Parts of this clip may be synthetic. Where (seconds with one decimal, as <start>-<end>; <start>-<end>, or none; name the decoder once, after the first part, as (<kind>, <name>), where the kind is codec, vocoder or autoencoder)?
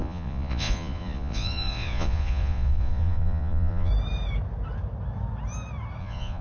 0.0-3.9 (vocoder, Vocos); 6.0-6.4